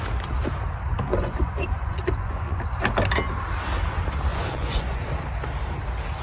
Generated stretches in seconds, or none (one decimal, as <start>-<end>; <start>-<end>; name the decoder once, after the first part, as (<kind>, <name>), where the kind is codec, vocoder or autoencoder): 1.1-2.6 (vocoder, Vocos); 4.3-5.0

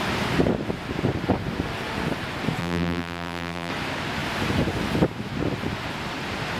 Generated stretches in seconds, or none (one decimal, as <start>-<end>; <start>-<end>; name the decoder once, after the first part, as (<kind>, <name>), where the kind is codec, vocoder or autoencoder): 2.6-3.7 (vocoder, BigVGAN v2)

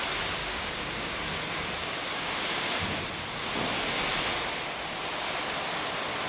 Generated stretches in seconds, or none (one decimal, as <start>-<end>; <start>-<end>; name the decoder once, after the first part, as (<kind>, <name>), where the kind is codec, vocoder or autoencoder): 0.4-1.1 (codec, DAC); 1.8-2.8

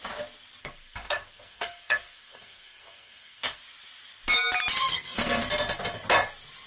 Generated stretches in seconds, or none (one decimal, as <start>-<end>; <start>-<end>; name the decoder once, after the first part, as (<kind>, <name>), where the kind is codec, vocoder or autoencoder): 0.6-3.6 (codec, SNAC); 4.8-5.4

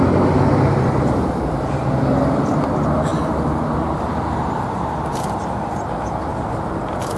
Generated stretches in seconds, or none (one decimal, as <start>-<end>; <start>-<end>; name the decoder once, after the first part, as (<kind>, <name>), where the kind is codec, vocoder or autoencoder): 3.1-3.6 (vocoder, BigVGAN v2)